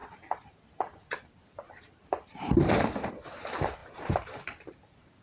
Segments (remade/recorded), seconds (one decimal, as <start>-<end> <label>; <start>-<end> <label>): 0.0-5.2 remade